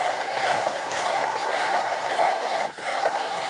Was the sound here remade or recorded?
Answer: remade